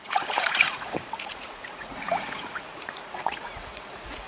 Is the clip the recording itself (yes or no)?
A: no